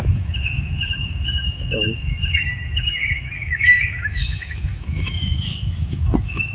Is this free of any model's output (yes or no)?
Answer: no